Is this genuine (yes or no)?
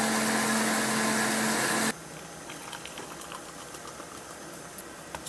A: yes